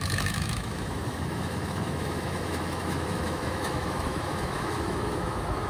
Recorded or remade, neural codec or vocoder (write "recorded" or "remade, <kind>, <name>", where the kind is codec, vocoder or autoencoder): remade, autoencoder, DAC-VAE